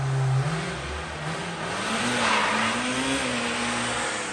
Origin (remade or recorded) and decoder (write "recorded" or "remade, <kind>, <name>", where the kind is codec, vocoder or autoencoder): recorded